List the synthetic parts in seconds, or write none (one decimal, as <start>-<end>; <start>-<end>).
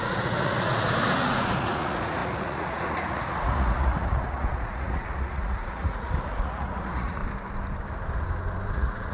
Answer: 0.0-7.2; 8.7-9.1